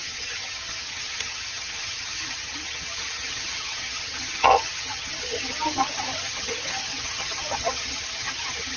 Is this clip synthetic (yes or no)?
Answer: yes